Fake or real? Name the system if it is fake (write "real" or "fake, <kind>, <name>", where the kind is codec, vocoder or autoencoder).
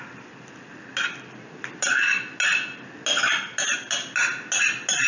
real